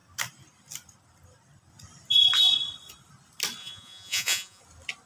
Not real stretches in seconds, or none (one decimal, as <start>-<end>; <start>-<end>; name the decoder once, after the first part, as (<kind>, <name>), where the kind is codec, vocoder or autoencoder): 3.6-4.6 (vocoder, Vocos)